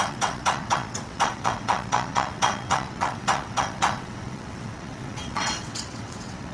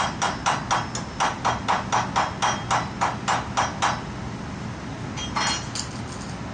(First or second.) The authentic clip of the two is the second